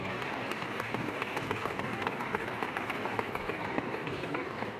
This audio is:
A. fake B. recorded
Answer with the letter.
A